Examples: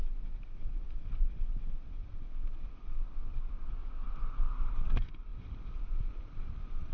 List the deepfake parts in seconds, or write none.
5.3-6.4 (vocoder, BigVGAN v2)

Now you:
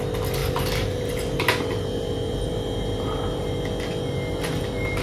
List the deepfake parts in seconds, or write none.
0.4-3.4 (vocoder, BigVGAN v2)

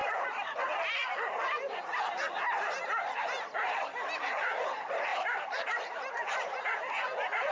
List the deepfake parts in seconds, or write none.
0.0-0.6 (vocoder, BigVGAN v2); 5.1-6.6

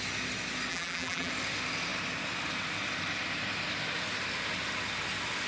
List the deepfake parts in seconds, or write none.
0.7-1.3 (vocoder, BigVGAN v2)

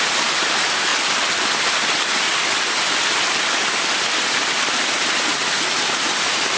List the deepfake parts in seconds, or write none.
0.9-4.1 (vocoder, BigVGAN v2); 5.3-6.6